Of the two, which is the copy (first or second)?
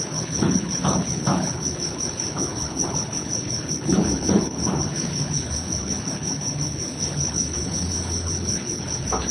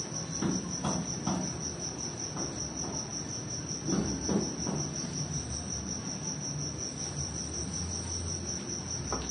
first